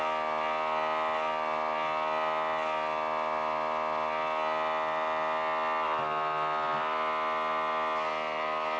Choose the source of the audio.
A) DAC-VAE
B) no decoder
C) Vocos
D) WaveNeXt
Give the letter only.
B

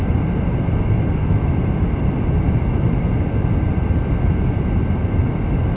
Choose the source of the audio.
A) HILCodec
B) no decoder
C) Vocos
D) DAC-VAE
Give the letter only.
B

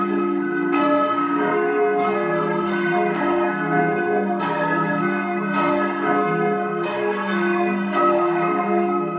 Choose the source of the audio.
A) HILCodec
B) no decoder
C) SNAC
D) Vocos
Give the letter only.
C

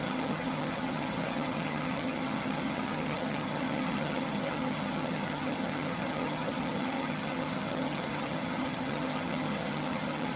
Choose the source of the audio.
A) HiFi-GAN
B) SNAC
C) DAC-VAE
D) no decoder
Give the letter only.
A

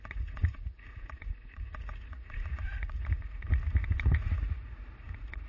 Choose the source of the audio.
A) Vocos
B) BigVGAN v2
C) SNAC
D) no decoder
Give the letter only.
A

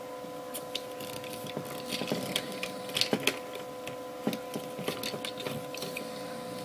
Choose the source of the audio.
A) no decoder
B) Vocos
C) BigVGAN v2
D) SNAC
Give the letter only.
A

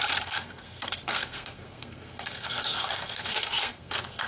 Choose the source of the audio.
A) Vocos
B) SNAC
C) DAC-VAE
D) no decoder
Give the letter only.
B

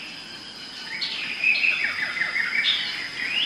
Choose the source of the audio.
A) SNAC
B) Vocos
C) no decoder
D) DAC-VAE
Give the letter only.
C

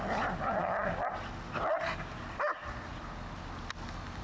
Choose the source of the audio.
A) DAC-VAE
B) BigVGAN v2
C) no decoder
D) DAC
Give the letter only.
C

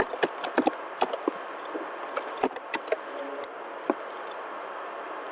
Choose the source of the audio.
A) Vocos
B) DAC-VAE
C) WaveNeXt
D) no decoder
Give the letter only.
D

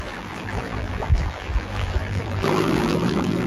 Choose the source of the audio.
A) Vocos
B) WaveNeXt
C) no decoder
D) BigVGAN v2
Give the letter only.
D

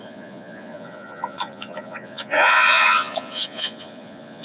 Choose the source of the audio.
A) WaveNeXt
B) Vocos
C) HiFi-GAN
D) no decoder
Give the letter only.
B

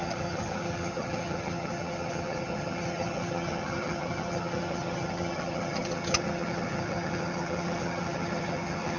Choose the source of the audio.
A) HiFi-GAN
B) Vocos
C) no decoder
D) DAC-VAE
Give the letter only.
A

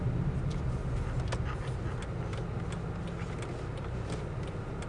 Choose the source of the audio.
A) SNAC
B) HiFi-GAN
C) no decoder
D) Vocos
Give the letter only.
C